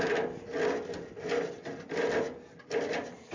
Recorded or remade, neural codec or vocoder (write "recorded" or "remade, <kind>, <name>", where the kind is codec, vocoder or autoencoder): recorded